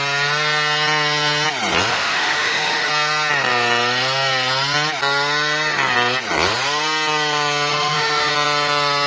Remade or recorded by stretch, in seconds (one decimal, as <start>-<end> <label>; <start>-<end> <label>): 0.0-1.9 recorded; 1.9-2.9 remade; 2.9-7.7 recorded; 7.7-8.3 remade; 8.3-9.1 recorded